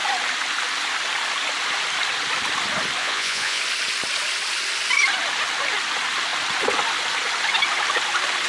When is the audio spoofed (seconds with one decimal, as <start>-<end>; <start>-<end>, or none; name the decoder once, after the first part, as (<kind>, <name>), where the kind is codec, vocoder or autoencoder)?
3.0-3.6 (vocoder, Vocos)